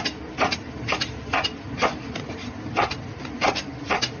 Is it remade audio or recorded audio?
recorded